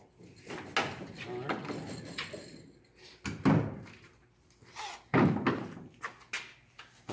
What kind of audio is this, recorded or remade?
recorded